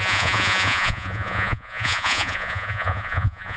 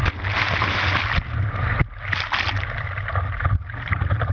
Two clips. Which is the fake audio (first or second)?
first